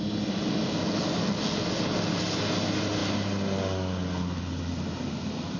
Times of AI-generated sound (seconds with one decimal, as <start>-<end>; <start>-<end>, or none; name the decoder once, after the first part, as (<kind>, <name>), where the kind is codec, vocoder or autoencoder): none